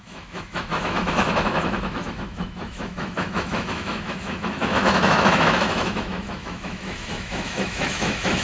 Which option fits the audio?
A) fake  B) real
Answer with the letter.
A